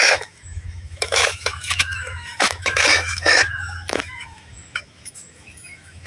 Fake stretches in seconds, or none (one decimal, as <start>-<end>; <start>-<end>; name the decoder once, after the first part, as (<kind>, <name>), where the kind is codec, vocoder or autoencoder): 0.0-6.1 (autoencoder, DAC-VAE)